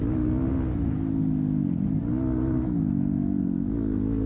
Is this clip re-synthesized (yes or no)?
no